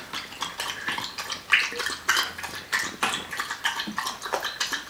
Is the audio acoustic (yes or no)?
yes